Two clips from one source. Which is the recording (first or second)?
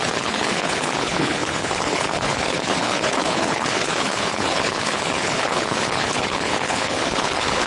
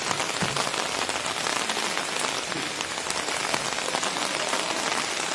second